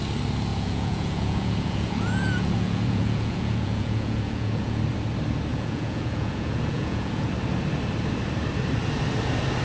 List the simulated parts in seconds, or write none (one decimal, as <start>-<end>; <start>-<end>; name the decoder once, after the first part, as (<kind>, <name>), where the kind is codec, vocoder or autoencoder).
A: 0.5-4.8 (vocoder, Vocos); 5.5-7.3